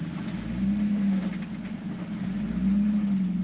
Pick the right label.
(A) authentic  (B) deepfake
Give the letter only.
A